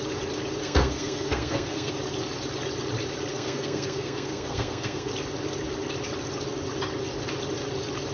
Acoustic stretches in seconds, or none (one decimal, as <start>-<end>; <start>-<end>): 0.0-0.6; 1.9-3.3; 5.1-8.1